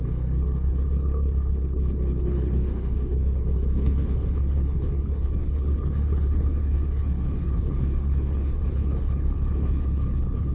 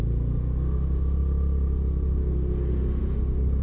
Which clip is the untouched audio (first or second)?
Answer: second